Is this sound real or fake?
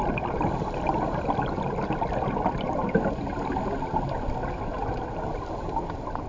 real